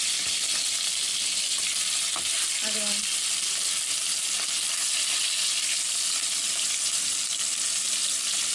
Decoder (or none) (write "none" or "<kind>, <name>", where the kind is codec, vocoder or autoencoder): none